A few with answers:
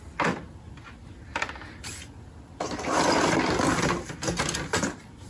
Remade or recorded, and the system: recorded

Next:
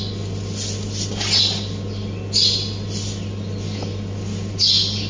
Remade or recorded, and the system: recorded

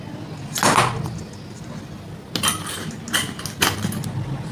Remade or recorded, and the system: recorded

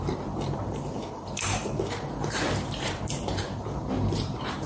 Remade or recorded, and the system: remade, vocoder, BigVGAN v2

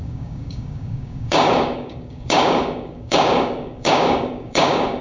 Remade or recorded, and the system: remade, codec, DAC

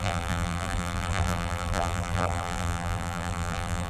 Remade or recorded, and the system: remade, vocoder, BigVGAN v2